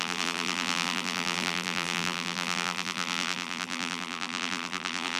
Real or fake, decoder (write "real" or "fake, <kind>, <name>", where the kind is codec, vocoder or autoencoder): fake, vocoder, BigVGAN v2